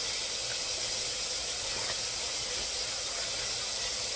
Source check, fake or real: real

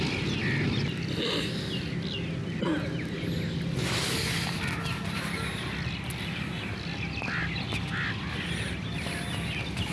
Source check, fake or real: real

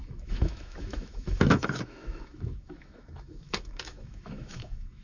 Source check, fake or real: fake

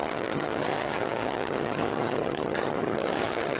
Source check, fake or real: fake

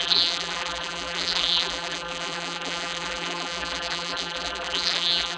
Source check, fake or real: fake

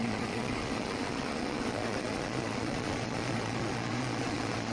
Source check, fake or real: fake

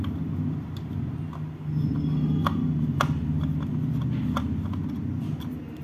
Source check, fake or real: real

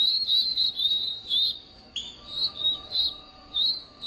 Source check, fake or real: fake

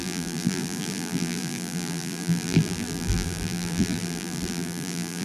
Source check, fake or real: fake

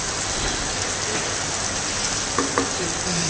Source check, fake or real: real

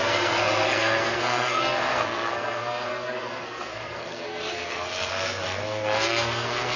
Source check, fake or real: fake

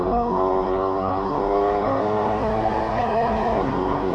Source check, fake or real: fake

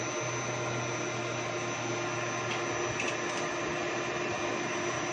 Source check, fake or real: real